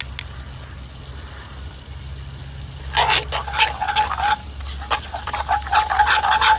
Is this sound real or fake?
real